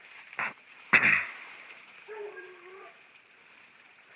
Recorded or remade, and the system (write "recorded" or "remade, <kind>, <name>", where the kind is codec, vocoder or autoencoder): remade, vocoder, BigVGAN v2